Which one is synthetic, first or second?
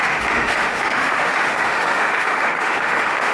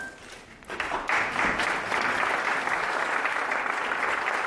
first